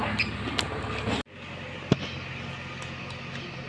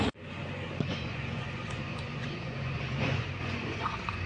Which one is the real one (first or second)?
first